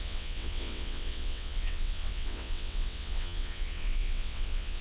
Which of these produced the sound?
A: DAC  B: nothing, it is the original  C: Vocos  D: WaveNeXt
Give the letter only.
D